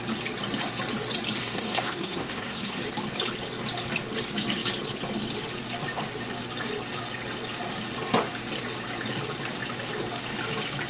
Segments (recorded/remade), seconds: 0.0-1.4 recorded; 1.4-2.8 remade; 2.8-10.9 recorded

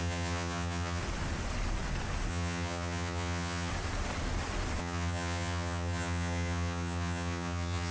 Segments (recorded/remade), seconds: 0.0-1.0 remade; 1.0-2.3 recorded; 2.3-3.7 remade; 3.7-4.8 recorded; 4.8-7.9 remade

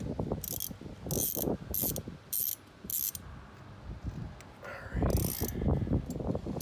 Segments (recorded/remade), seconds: 0.0-6.6 recorded

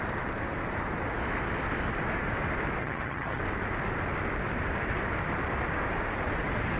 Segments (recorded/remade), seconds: 0.0-2.8 recorded; 2.8-3.4 remade; 3.4-6.8 recorded

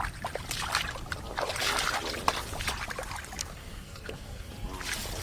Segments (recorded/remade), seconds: 0.0-3.4 recorded; 3.4-4.5 remade; 4.5-5.2 recorded